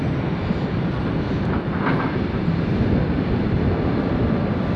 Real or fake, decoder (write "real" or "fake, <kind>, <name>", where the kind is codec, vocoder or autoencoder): real